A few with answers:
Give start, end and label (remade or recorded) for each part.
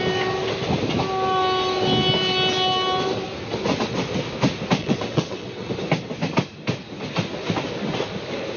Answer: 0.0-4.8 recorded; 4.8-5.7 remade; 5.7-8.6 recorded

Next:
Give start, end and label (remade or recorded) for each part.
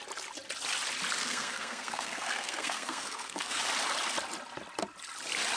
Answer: 0.0-1.2 recorded; 1.2-3.6 remade; 3.6-5.6 recorded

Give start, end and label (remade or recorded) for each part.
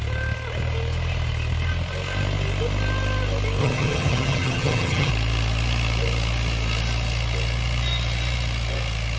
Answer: 0.0-3.6 recorded; 3.6-5.1 remade; 5.1-9.2 recorded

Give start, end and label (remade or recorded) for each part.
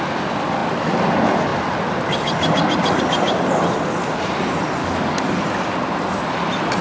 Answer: 0.0-4.8 recorded; 4.8-5.3 remade; 5.3-6.8 recorded